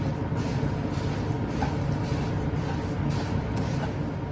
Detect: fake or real real